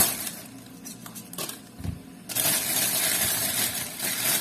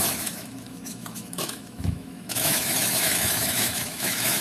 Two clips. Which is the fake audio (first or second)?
second